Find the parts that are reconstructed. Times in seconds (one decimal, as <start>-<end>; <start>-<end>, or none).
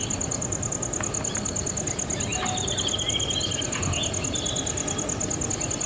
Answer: none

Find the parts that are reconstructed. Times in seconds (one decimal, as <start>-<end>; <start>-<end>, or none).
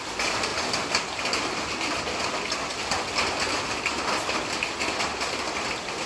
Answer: none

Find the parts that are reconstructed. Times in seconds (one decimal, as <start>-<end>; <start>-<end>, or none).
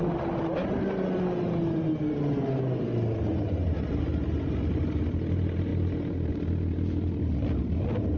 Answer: 5.7-6.3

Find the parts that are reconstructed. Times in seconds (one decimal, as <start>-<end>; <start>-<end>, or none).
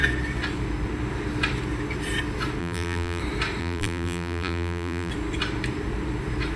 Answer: 2.6-3.2; 3.6-5.1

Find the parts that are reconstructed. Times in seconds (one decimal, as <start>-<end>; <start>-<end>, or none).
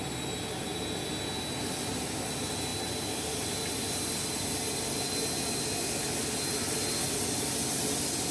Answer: none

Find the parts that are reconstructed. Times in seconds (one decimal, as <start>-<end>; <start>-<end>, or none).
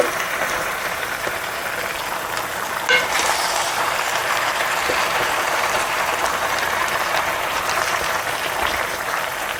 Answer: 0.0-1.6; 3.0-9.6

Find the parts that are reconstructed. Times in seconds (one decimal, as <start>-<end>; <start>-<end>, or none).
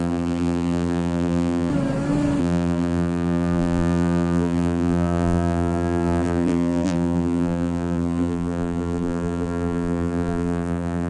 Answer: 0.0-1.7; 2.4-11.1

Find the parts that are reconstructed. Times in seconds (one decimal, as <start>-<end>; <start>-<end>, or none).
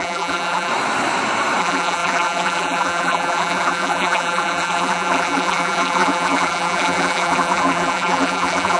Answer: 0.0-0.7; 1.6-8.8